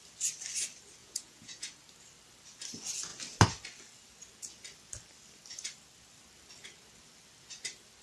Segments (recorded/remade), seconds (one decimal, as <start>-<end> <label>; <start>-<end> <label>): 0.0-1.0 recorded; 1.0-1.8 remade; 1.8-8.0 recorded